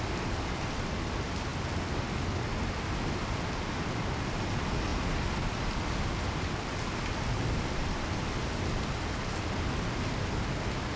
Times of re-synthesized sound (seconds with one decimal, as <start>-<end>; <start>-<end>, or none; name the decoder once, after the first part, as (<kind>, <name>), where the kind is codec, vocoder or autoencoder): none